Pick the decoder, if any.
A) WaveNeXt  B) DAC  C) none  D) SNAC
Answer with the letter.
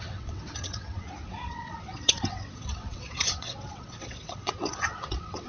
A